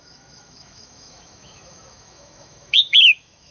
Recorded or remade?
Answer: remade